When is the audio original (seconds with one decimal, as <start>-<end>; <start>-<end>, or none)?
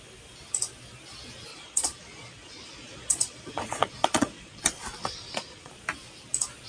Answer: 0.0-1.5; 4.6-5.0; 5.7-6.7